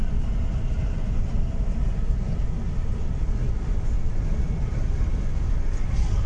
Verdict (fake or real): real